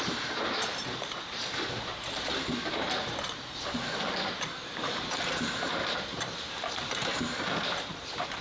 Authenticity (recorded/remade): remade